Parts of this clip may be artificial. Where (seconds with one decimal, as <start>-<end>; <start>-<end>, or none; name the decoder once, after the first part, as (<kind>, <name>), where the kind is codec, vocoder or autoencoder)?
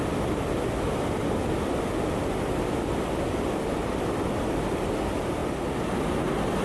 none